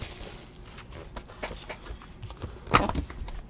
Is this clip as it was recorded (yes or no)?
yes